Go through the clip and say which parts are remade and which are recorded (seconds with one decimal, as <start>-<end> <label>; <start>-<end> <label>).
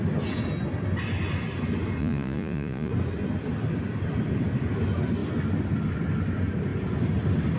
0.0-2.0 recorded; 2.0-2.9 remade; 2.9-7.6 recorded